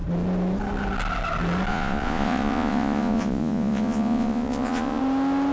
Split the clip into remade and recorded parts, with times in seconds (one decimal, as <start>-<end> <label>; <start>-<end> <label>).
0.0-1.7 recorded; 1.7-5.0 remade; 5.0-5.5 recorded